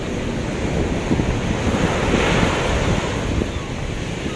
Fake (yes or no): no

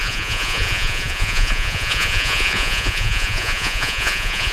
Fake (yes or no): yes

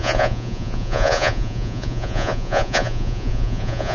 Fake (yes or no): yes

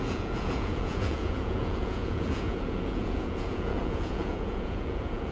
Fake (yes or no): yes